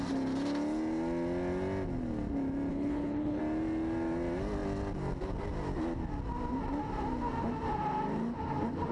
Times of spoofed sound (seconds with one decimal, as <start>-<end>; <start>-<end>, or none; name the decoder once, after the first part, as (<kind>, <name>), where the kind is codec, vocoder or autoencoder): 2.7-3.4 (codec, HILCodec)